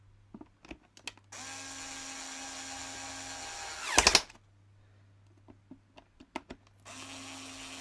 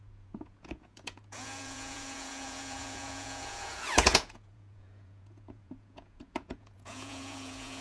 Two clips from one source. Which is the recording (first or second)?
first